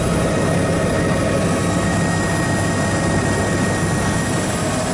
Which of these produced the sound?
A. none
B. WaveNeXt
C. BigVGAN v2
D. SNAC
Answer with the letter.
A